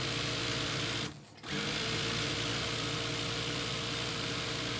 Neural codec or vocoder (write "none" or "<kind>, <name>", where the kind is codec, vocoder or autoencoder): none